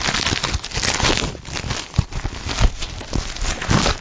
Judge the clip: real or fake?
real